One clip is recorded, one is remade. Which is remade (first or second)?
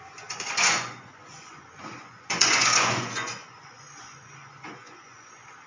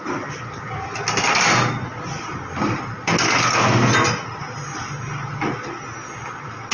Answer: first